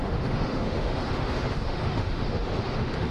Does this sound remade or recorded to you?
remade